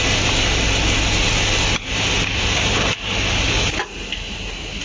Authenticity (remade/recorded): recorded